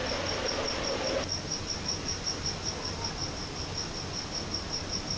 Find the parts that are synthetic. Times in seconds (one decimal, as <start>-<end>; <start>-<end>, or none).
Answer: none